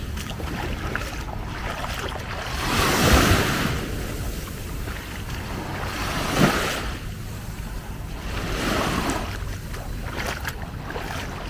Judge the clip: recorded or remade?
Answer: recorded